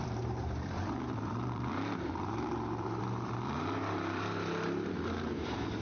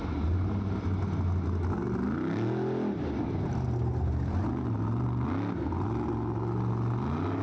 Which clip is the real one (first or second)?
second